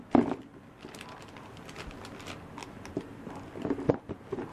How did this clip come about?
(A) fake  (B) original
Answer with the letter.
B